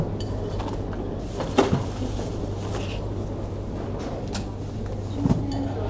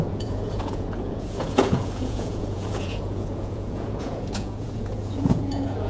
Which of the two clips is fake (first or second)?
second